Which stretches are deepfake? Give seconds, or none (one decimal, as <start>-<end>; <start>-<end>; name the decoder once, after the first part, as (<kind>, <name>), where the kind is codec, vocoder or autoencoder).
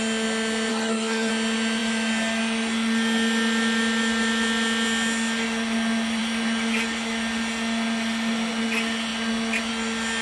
0.7-1.3 (codec, SNAC)